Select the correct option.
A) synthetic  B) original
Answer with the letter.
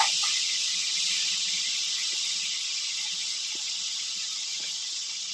B